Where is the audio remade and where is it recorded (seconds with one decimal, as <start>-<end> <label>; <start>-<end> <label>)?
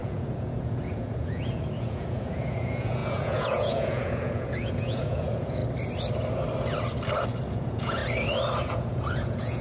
0.0-5.6 remade; 5.6-7.5 recorded; 7.5-8.0 remade; 8.0-8.6 recorded; 8.6-9.6 remade